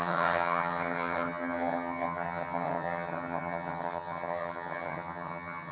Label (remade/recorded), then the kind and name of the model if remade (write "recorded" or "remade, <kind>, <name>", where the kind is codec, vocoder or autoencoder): remade, vocoder, HiFi-GAN